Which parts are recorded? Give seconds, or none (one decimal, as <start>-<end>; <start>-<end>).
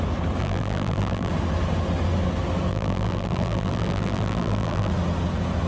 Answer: 0.0-0.4; 1.3-2.7; 4.9-5.7